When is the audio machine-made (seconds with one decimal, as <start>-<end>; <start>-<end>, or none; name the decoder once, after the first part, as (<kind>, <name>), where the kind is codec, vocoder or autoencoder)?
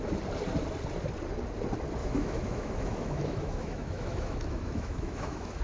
2.0-5.6 (autoencoder, DAC-VAE)